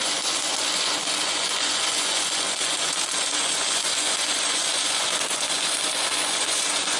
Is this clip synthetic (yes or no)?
yes